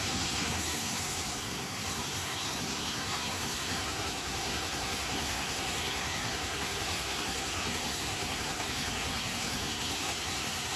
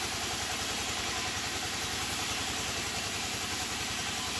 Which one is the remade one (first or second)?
first